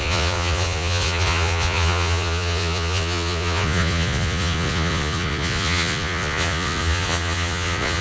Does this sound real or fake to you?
fake